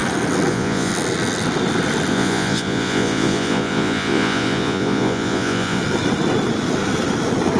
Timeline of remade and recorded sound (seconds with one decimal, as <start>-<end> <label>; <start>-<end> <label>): 0.0-0.5 recorded; 0.5-0.9 remade; 0.9-2.1 recorded; 2.1-5.8 remade; 5.8-7.6 recorded